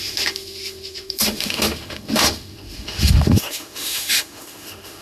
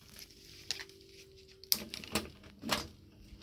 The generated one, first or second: first